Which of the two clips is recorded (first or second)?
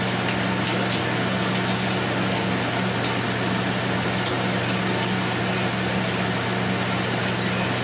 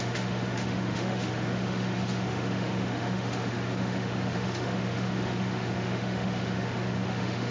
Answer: first